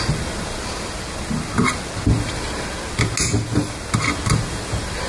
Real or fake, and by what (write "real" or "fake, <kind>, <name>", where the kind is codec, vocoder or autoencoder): real